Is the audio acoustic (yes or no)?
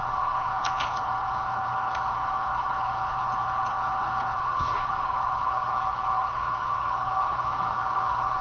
no